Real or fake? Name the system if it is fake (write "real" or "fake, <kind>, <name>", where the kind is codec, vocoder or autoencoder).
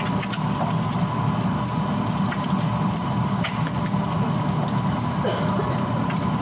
real